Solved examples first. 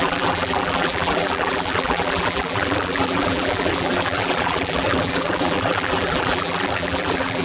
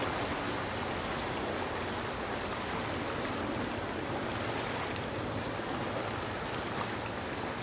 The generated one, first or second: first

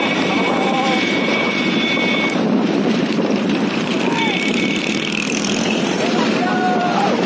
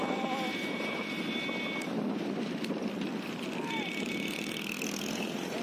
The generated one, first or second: first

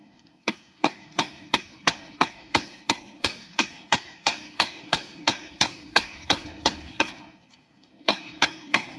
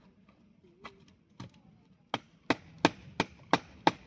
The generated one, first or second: first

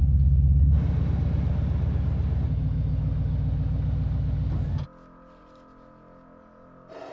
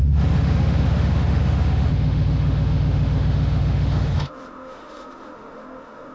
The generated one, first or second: second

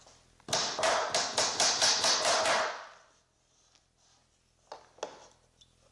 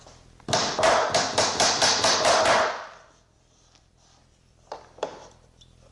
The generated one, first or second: second